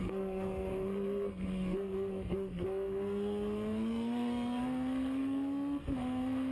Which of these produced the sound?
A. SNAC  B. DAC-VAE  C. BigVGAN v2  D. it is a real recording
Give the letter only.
A